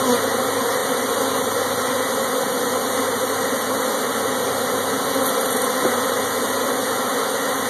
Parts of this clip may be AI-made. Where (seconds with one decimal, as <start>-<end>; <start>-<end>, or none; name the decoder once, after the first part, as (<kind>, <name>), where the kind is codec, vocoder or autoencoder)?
none